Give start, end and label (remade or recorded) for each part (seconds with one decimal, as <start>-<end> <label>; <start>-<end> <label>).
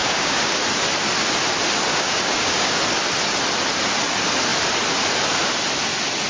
0.0-0.6 remade; 0.6-1.9 recorded; 1.9-2.8 remade; 2.8-6.3 recorded